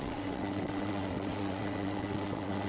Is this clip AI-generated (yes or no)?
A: yes